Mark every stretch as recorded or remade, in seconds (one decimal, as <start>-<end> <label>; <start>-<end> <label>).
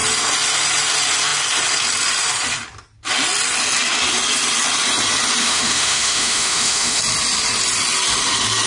0.0-5.4 recorded; 5.4-7.0 remade; 7.0-8.7 recorded